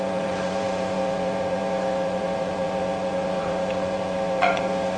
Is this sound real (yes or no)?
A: no